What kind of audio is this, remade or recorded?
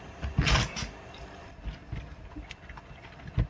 recorded